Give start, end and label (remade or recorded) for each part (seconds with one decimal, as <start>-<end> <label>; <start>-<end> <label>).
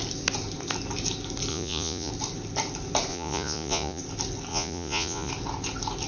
0.0-1.5 recorded; 1.5-2.1 remade; 2.1-3.1 recorded; 3.1-4.0 remade; 4.0-4.5 recorded; 4.5-5.3 remade; 5.3-6.1 recorded